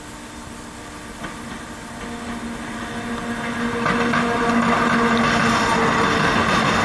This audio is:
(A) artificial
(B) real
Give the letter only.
B